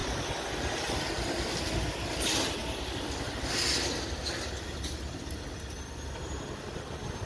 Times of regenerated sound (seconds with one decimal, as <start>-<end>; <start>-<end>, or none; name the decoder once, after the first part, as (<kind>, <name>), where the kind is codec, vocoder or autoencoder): none